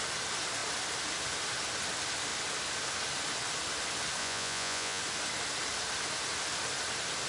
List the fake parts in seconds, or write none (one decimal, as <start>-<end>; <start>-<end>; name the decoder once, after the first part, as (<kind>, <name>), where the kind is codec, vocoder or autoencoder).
4.2-5.0 (vocoder, Vocos)